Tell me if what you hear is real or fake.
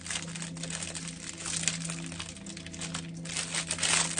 real